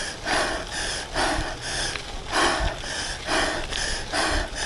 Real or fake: real